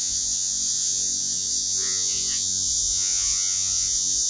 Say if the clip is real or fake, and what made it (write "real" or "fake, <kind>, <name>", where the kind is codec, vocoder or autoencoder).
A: fake, vocoder, Vocos